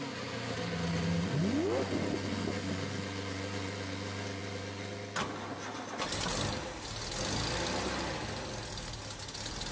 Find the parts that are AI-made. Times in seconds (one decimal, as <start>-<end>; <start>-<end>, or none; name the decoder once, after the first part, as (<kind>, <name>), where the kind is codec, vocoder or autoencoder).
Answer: none